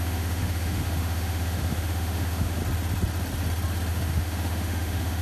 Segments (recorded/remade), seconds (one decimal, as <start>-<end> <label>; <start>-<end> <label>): 0.0-2.6 remade; 2.6-3.9 recorded; 3.9-5.2 remade